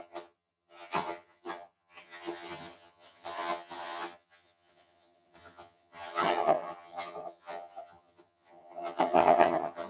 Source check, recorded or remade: remade